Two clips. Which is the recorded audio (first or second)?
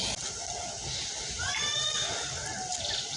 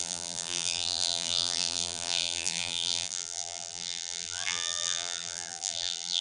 first